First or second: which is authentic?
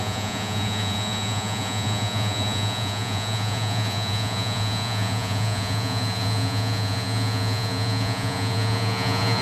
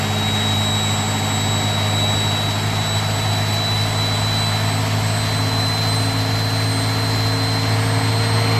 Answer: second